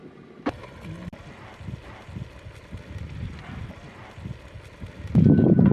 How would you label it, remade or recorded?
recorded